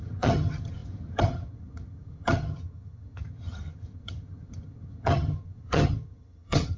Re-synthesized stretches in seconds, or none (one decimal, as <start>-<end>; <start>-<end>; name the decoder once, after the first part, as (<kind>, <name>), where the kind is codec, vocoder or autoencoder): 0.0-6.8 (vocoder, HiFi-GAN)